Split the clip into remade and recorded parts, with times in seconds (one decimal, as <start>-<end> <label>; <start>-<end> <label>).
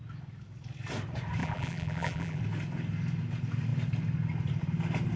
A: 0.0-1.4 recorded; 1.4-2.4 remade; 2.4-5.2 recorded